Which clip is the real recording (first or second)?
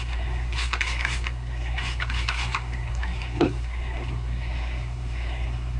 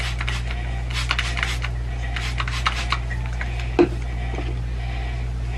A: second